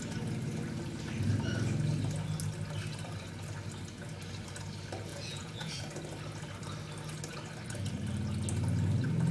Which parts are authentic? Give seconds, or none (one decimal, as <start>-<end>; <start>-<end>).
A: 0.0-5.1; 5.8-9.3